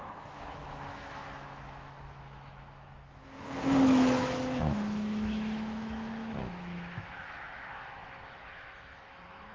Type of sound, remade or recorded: remade